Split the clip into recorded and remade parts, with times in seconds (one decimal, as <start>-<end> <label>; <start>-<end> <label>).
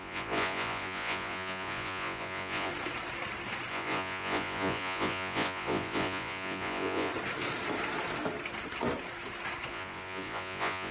0.0-2.7 remade; 2.7-3.7 recorded; 3.7-7.1 remade; 7.1-9.7 recorded; 9.7-10.9 remade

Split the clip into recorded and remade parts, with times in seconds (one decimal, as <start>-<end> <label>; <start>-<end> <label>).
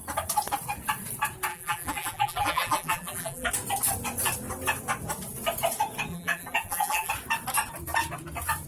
0.0-1.5 recorded; 1.5-3.5 remade; 3.5-6.1 recorded; 6.1-7.1 remade; 7.1-8.7 recorded